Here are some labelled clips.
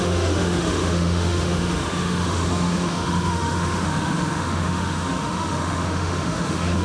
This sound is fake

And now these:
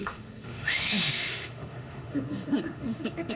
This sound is fake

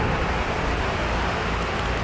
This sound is real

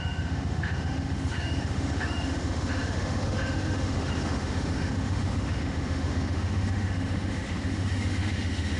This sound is fake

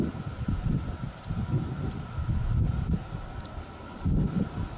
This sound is real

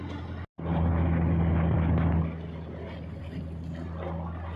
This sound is real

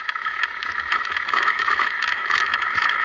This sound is fake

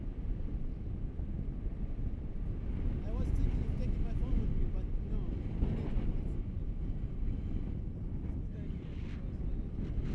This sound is real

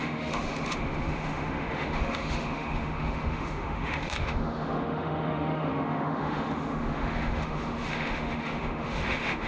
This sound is fake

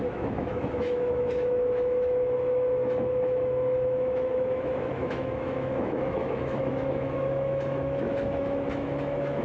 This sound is fake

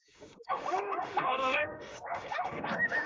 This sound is fake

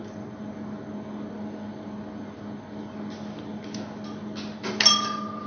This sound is real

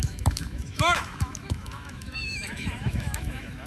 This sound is fake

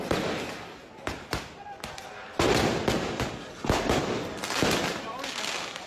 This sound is real